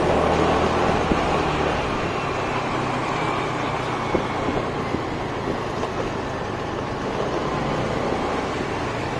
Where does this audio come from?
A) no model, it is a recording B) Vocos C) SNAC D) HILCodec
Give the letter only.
A